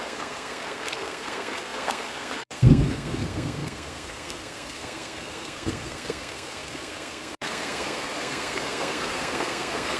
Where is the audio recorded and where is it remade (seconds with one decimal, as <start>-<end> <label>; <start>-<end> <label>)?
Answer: 0.0-10.0 remade